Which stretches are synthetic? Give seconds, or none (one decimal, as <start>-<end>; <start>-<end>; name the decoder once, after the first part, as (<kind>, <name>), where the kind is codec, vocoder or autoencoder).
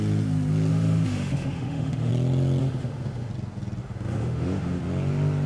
0.7-2.1 (autoencoder, DAC-VAE); 2.6-3.3; 3.8-4.8